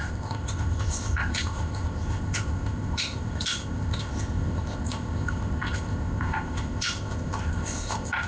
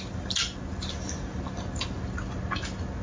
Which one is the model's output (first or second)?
first